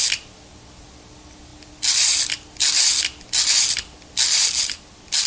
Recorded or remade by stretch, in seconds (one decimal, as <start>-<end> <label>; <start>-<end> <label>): 0.0-5.3 recorded